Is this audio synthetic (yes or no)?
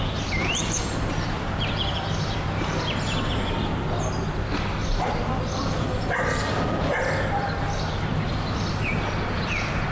yes